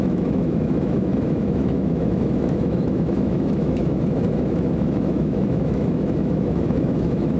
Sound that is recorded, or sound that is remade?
remade